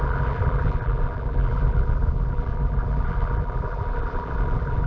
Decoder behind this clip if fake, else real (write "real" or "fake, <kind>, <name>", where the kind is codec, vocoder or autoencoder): fake, vocoder, BigVGAN v2